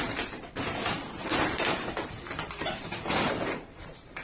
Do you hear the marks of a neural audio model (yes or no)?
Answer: yes